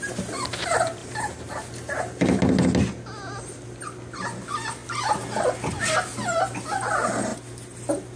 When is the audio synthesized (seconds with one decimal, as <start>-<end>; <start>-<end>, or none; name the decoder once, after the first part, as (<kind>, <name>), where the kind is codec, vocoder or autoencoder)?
1.0-1.5 (vocoder, BigVGAN v2)